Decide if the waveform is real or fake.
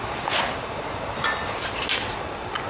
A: real